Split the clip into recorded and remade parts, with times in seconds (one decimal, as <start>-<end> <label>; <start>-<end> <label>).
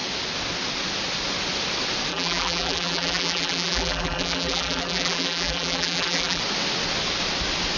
0.0-2.1 recorded; 2.1-6.4 remade; 6.4-7.8 recorded